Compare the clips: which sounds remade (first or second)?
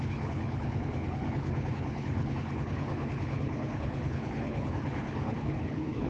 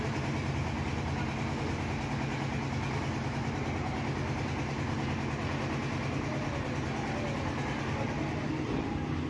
first